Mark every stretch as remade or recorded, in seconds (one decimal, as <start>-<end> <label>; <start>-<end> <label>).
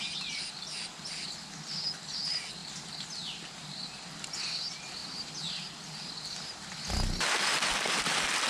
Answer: 0.0-2.6 recorded; 2.6-4.3 remade; 4.3-8.5 recorded